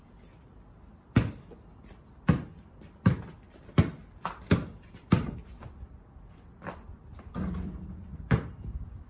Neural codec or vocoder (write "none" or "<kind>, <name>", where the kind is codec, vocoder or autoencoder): vocoder, BigVGAN v2